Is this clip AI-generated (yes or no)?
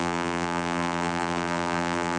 yes